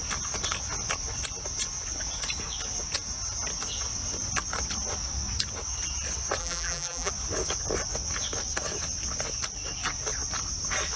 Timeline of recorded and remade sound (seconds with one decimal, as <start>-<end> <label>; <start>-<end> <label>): 0.0-6.4 recorded; 6.4-7.1 remade; 7.1-11.0 recorded